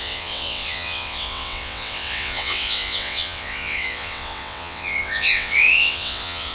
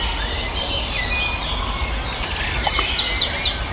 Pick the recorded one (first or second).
second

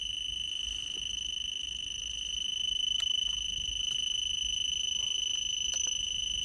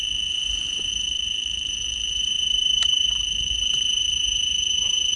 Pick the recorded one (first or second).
first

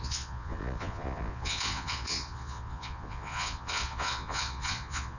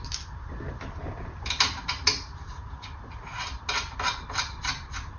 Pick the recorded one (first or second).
second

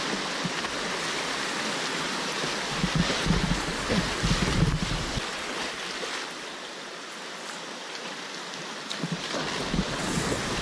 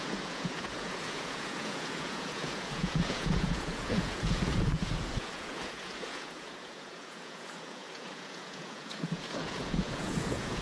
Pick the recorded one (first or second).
first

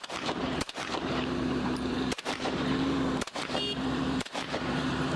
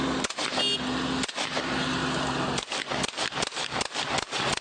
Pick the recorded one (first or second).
second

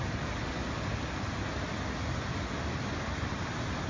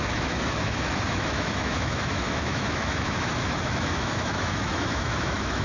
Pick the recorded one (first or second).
first